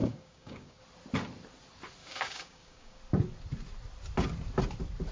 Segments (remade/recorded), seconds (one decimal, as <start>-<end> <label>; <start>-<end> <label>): 0.0-0.8 remade; 0.8-2.0 recorded; 2.0-3.0 remade; 3.0-5.1 recorded

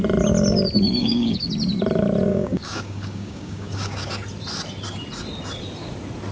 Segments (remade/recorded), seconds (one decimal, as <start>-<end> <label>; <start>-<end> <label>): 0.0-1.0 recorded; 1.0-1.5 remade; 1.5-2.3 recorded; 2.3-4.1 remade; 4.1-6.3 recorded

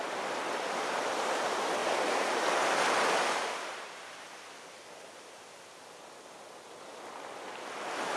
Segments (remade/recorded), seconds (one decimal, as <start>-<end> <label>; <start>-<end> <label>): 0.0-8.2 recorded

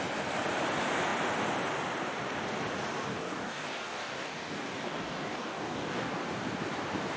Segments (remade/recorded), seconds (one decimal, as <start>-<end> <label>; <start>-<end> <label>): 0.0-3.1 recorded; 3.1-6.1 remade; 6.1-7.2 recorded

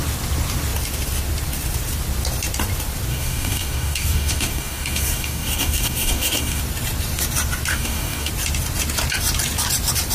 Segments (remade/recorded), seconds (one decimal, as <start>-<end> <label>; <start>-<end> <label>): 0.0-3.1 recorded; 3.1-6.6 remade; 6.6-7.7 recorded; 7.7-8.3 remade; 8.3-10.1 recorded

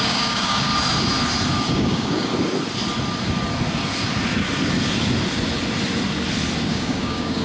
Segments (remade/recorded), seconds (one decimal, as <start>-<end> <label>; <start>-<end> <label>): 0.0-0.7 remade; 0.7-1.7 recorded; 1.7-2.3 remade; 2.3-6.7 recorded; 6.7-7.4 remade

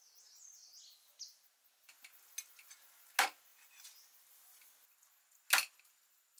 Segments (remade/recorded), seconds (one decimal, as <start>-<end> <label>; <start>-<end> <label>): 0.0-6.4 recorded

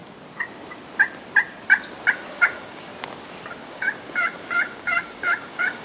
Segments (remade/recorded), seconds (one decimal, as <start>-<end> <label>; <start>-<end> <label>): 0.0-2.3 recorded; 2.3-2.9 remade; 2.9-3.6 recorded; 3.6-5.8 remade